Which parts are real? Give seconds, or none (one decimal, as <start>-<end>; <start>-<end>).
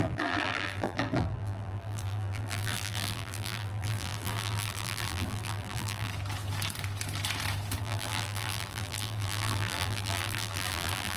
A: 6.1-7.8